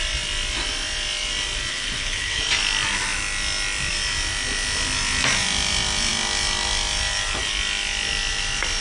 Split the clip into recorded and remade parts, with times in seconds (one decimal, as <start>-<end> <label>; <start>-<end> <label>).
0.0-1.7 recorded; 1.7-2.4 remade; 2.4-8.8 recorded